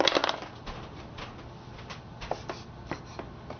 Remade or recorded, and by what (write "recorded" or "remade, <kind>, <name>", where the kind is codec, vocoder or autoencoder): recorded